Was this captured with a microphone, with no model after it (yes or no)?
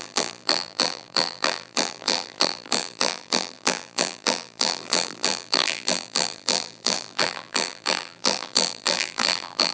no